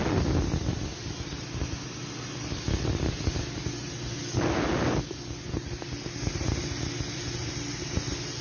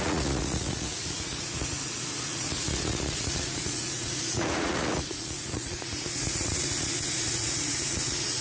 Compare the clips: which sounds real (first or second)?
first